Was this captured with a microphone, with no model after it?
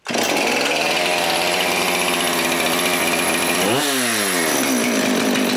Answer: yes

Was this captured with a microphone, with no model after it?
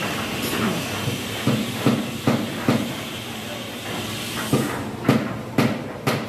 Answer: yes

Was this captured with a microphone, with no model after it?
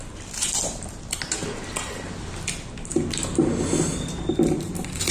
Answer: yes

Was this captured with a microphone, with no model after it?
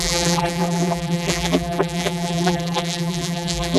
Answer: no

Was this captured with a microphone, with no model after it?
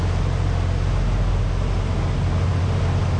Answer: yes